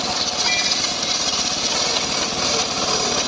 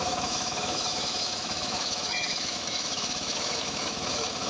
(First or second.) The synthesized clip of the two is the second